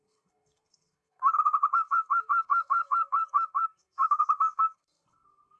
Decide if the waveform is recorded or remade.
remade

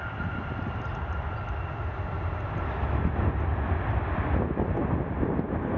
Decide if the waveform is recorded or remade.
recorded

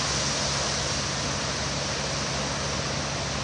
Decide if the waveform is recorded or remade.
recorded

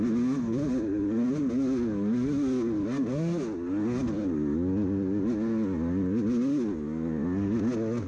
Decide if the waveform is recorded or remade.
recorded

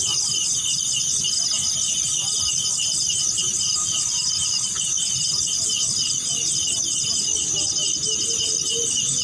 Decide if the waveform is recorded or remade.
recorded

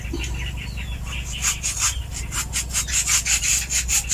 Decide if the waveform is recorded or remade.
recorded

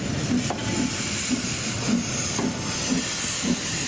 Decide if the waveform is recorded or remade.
recorded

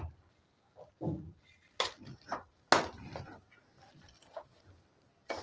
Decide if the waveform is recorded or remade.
recorded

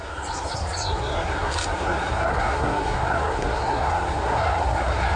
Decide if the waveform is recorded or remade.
remade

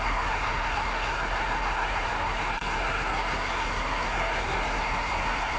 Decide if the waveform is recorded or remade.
remade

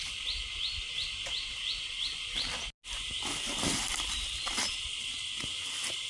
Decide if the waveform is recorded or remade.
recorded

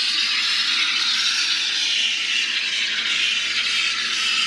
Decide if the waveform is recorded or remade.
recorded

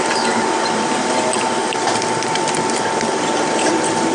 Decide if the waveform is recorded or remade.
recorded